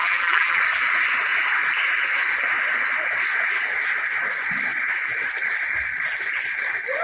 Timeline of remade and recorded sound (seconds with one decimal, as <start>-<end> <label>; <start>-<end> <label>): 0.0-0.6 remade; 0.6-7.0 recorded